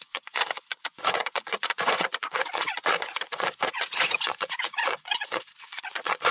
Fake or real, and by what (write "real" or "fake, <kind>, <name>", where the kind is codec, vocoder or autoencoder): fake, vocoder, Vocos